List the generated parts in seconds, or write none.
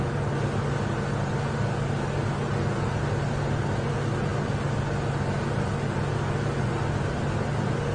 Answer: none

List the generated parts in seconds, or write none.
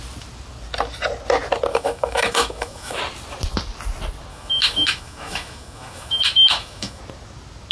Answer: 1.7-3.0; 4.3-7.0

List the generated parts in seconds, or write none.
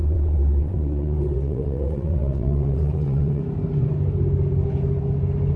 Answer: 0.0-3.4